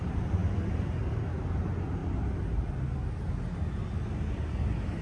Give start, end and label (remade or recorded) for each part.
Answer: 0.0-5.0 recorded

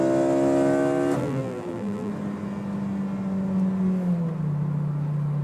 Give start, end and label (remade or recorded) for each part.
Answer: 0.0-1.2 recorded; 1.2-2.1 remade; 2.1-5.4 recorded